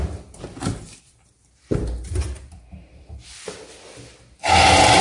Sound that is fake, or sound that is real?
real